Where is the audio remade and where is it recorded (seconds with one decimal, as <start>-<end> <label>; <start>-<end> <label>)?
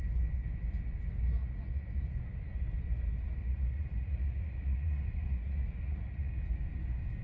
0.0-1.4 recorded; 1.4-2.0 remade; 2.0-3.4 recorded; 3.4-6.3 remade; 6.3-7.2 recorded